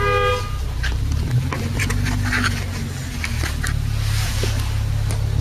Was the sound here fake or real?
real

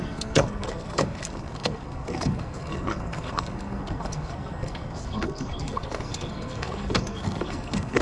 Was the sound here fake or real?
fake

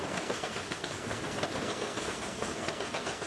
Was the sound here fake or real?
fake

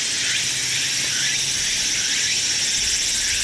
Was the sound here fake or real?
real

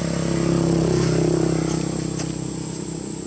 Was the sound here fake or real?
real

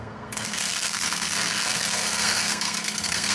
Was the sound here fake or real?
fake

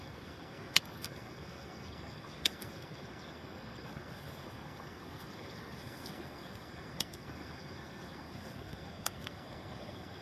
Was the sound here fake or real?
fake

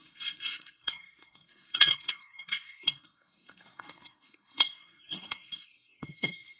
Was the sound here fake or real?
fake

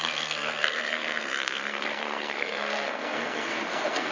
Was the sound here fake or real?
fake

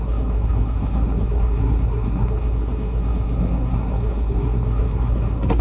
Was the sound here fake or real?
fake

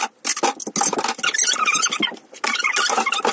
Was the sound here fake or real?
real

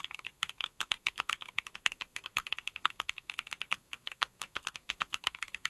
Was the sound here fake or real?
fake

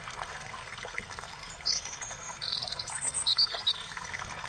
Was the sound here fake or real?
fake